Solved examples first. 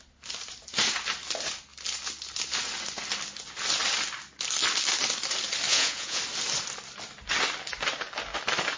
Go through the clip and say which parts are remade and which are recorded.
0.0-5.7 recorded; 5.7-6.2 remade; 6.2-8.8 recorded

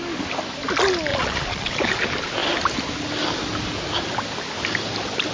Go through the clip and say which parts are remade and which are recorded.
0.0-1.1 recorded; 1.1-1.7 remade; 1.7-5.3 recorded

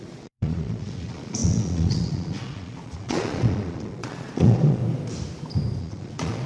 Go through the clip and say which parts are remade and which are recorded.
0.0-4.8 remade; 4.8-5.8 recorded; 5.8-6.5 remade